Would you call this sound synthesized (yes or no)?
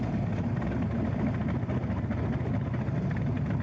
no